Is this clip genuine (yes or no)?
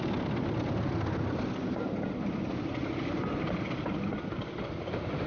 yes